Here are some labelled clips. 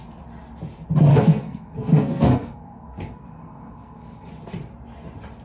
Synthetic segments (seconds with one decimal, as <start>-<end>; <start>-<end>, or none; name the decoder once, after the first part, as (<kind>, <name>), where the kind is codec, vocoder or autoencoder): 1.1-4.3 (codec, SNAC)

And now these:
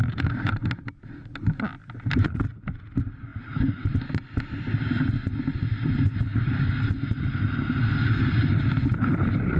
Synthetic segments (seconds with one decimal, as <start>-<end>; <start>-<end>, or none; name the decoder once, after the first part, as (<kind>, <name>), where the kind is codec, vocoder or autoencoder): 0.0-3.3 (vocoder, BigVGAN v2); 7.2-9.6

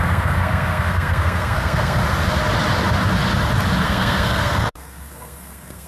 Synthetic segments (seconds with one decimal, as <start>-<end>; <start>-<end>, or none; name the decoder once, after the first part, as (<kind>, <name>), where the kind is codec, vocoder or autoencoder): 0.0-2.0 (codec, SNAC); 3.8-5.9

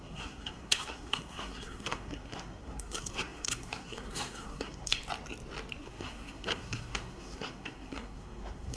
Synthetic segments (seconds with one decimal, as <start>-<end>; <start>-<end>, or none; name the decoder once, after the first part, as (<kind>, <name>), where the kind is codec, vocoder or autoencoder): 0.0-5.0 (codec, SNAC); 5.8-8.8

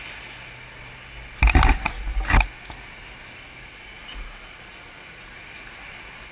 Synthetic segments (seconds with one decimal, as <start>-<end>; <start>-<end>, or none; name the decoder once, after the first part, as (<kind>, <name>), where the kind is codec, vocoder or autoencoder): none

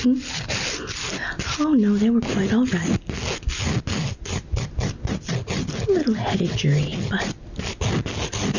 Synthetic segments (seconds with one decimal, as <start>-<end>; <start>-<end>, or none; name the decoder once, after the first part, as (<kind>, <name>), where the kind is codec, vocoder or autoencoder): none